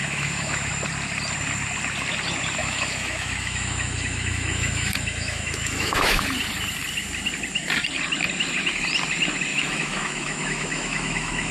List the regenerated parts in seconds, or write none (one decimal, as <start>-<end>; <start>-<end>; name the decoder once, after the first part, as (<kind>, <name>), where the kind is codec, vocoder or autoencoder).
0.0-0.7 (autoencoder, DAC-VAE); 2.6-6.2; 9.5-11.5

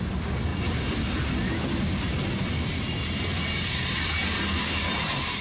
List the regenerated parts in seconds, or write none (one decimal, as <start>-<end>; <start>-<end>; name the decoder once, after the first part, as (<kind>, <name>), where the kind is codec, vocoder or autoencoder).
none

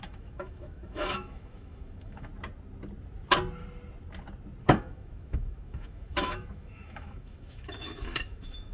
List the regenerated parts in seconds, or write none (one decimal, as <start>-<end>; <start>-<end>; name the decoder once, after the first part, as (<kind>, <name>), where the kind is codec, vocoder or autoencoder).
0.0-2.3 (autoencoder, DAC-VAE); 4.6-8.7

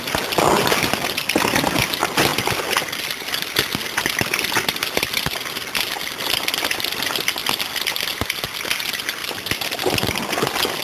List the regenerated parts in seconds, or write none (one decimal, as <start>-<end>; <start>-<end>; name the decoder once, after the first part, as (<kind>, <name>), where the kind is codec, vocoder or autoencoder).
none

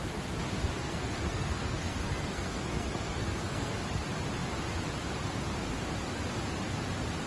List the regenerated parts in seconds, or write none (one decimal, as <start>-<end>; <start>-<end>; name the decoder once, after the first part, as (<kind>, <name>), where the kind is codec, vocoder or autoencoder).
0.8-3.7 (codec, SNAC)